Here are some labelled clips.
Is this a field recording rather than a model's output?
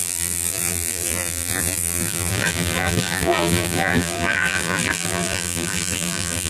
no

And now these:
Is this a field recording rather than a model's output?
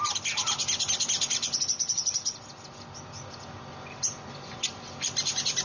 yes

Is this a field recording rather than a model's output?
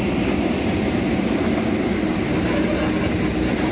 yes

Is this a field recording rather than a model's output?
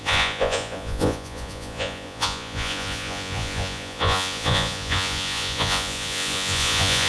no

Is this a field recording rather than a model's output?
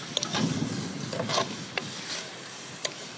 yes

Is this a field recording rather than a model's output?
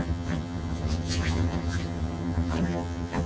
no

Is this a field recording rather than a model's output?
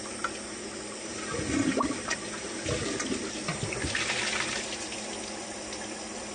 yes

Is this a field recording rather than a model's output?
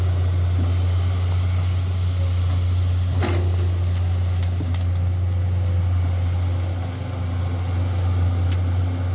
yes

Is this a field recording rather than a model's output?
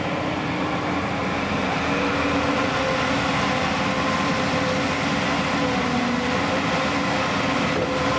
yes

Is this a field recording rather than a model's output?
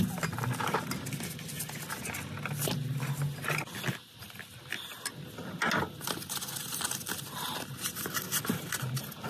yes